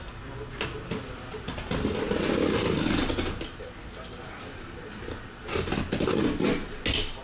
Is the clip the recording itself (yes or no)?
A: yes